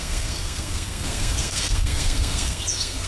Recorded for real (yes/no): no